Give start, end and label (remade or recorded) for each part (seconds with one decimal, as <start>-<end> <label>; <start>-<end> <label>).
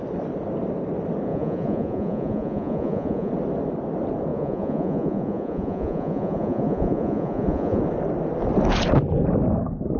0.0-1.3 recorded; 1.3-3.3 remade; 3.3-4.3 recorded; 4.3-7.8 remade; 7.8-10.0 recorded